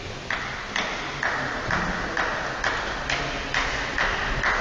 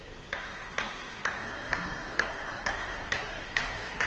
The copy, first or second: second